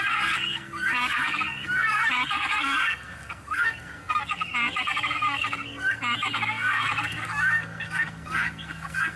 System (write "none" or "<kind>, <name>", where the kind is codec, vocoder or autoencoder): codec, SNAC